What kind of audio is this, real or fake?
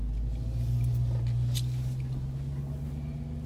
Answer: real